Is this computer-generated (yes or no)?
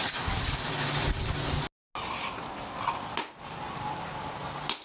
no